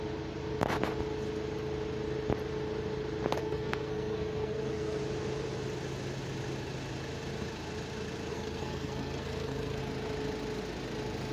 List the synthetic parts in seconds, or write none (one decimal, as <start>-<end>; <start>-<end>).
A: 3.4-5.0; 8.3-9.8